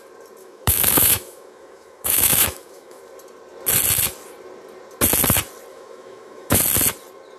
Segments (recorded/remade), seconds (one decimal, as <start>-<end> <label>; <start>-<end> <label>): 0.0-0.4 recorded; 0.4-3.0 remade; 3.0-5.7 recorded; 5.7-6.6 remade; 6.6-7.4 recorded